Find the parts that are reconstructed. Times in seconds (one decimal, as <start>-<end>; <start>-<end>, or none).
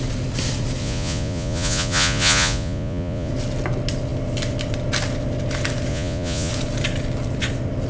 0.8-3.3; 5.9-6.5